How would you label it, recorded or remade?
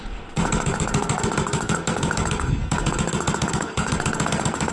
remade